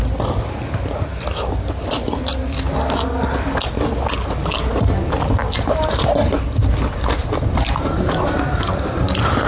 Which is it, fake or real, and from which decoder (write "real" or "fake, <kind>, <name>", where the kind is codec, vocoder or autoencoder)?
real